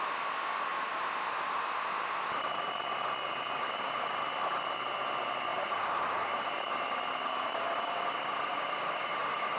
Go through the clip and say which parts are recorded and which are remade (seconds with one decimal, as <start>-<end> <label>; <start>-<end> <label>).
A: 0.0-5.5 recorded; 5.5-6.2 remade; 6.2-9.6 recorded